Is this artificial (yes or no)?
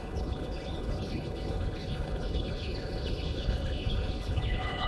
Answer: yes